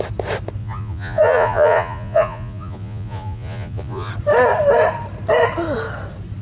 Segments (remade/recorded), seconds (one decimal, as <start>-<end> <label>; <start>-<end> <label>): 0.0-0.6 recorded; 0.6-4.1 remade; 4.1-6.4 recorded